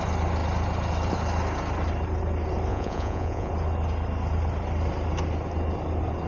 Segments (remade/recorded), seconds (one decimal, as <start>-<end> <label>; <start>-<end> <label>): 0.0-2.7 recorded; 2.7-3.5 remade; 3.5-6.3 recorded